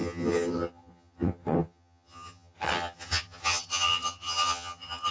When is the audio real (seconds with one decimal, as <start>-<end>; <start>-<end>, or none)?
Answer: none